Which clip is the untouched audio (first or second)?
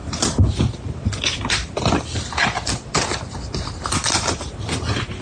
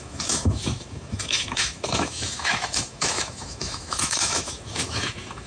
first